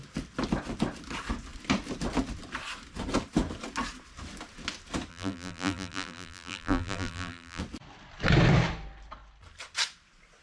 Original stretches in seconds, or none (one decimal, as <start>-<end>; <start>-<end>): 0.0-5.1; 7.6-10.4

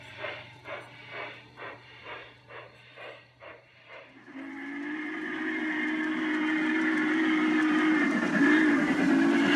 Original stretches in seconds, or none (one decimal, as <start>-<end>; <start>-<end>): none

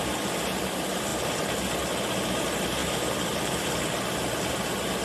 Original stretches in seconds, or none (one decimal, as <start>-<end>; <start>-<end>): 0.0-2.8; 3.7-5.0

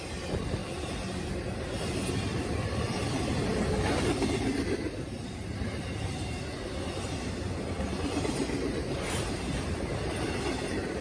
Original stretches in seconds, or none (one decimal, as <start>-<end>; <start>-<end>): 0.6-2.4; 3.5-8.4

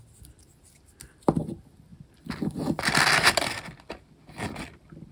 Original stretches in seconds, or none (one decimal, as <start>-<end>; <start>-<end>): 0.0-5.1